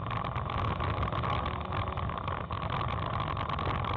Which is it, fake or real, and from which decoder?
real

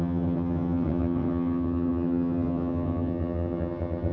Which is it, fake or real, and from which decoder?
fake, vocoder, HiFi-GAN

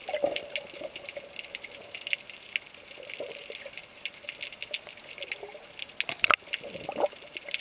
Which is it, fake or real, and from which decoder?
real